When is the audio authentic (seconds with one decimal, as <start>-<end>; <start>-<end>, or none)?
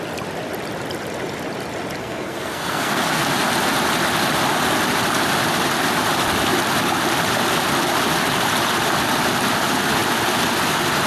0.0-2.0; 3.2-11.1